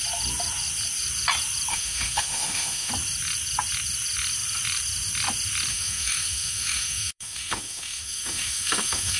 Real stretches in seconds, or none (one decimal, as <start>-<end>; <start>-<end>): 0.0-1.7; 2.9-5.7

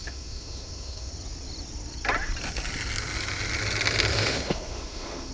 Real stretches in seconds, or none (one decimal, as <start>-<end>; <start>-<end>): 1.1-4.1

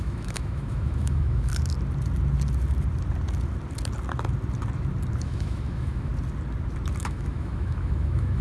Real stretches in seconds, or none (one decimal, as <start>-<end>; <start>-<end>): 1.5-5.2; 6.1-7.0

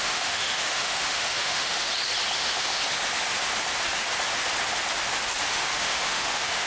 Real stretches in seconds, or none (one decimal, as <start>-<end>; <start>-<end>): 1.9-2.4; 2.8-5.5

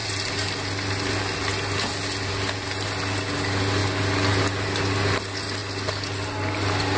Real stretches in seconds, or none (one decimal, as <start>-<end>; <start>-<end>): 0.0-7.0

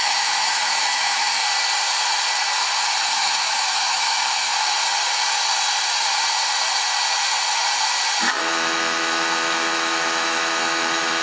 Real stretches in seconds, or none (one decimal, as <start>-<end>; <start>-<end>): 1.4-3.0; 4.5-8.4

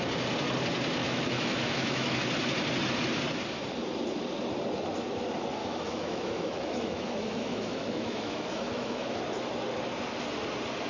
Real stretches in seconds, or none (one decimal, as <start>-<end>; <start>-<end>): 0.0-1.0; 2.2-5.6; 9.2-10.9